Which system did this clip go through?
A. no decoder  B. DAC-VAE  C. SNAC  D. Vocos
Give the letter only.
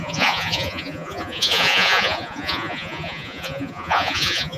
D